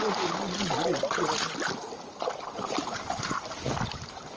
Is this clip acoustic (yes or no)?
yes